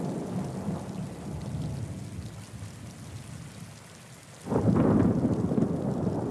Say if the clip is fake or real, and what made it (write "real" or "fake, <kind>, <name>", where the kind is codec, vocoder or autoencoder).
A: real